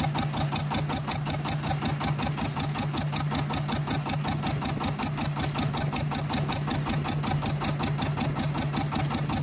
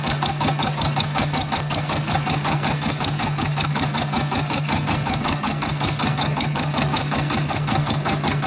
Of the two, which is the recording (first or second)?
first